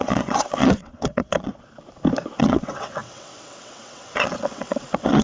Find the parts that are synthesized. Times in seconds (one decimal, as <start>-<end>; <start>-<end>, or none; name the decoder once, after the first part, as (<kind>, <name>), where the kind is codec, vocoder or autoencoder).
0.0-1.5 (vocoder, WaveNeXt); 2.4-5.2